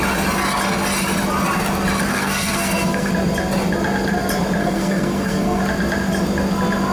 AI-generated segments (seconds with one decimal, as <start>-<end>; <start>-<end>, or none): 2.1-3.1; 4.6-5.6